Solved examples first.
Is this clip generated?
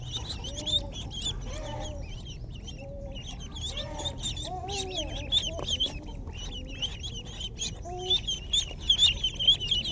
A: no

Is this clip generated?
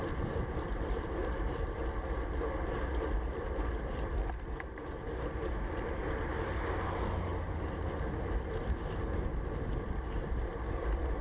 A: no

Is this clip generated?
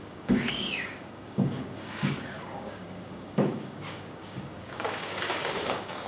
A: yes